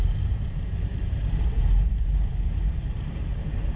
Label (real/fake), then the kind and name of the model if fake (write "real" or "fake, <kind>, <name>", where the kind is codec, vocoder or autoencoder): fake, vocoder, BigVGAN v2